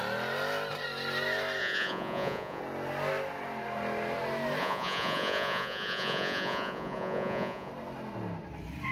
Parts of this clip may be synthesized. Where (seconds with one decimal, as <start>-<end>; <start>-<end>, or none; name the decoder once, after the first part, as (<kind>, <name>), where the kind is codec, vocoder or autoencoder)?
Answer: 1.6-2.6 (vocoder, Vocos); 4.6-7.7